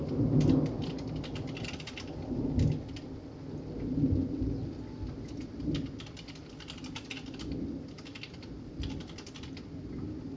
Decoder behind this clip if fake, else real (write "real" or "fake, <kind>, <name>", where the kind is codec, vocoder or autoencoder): real